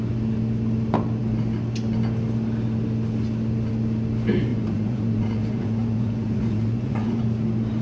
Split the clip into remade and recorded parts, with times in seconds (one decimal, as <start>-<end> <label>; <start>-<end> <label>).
0.0-4.5 recorded; 4.5-7.2 remade; 7.2-7.8 recorded